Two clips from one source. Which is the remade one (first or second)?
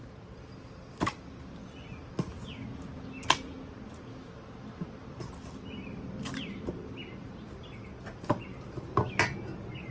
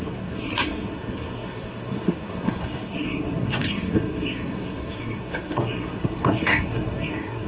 second